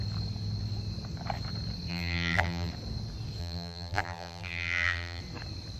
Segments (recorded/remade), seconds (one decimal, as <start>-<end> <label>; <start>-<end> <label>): 0.0-1.9 recorded; 1.9-2.7 remade; 2.7-3.4 recorded; 3.4-5.2 remade; 5.2-5.8 recorded